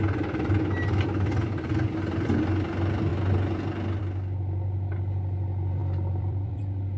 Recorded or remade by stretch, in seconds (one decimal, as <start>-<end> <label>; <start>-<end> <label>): 0.0-5.8 recorded; 5.8-6.6 remade; 6.6-7.0 recorded